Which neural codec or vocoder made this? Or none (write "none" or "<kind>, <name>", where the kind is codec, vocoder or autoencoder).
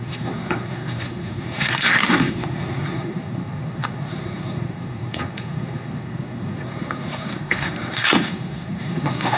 codec, SNAC